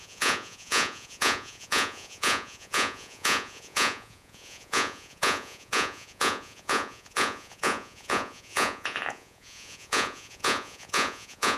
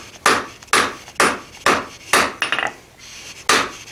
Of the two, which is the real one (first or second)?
second